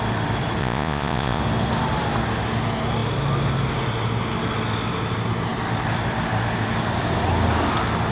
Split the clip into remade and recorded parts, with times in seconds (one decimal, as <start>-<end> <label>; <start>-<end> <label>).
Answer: 0.0-0.6 recorded; 0.6-1.4 remade; 1.4-8.1 recorded